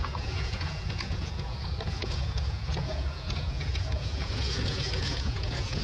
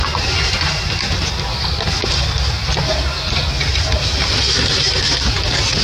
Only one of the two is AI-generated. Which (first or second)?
first